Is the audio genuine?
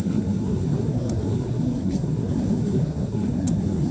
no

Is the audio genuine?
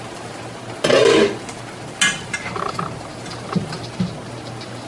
yes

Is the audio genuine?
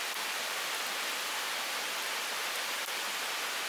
yes